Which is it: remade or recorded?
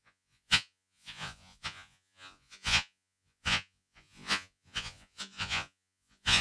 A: remade